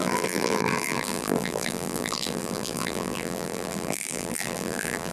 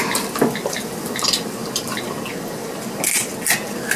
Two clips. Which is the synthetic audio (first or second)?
first